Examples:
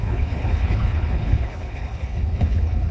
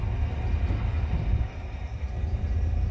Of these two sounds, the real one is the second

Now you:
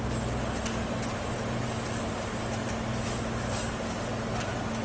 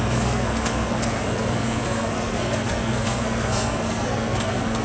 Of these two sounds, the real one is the first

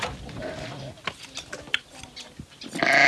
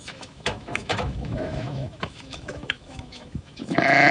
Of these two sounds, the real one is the first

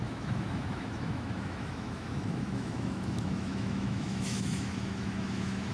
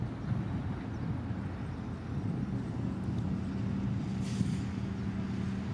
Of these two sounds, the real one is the second